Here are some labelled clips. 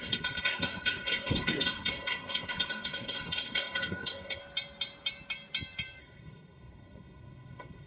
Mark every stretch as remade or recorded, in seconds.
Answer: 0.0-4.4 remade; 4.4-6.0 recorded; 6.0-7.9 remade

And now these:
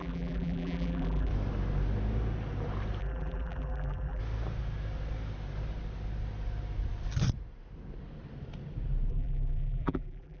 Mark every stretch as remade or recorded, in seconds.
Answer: 0.0-1.3 remade; 1.3-3.0 recorded; 3.0-4.2 remade; 4.2-9.1 recorded; 9.1-10.4 remade